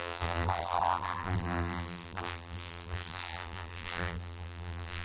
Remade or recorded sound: remade